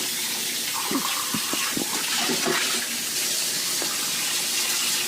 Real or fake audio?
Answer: real